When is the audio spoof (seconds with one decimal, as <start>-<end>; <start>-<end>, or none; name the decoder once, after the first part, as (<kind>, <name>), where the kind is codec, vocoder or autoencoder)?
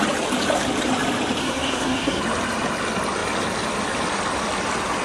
1.4-2.2 (codec, SNAC)